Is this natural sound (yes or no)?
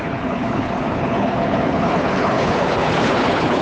no